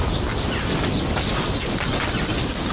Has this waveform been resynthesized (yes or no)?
no